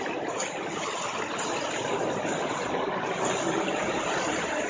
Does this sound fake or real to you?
real